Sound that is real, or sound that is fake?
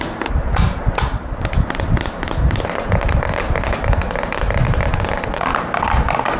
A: real